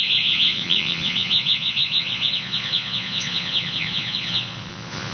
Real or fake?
fake